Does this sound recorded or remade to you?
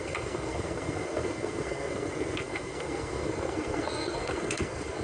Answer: remade